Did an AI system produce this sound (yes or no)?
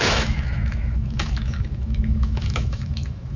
yes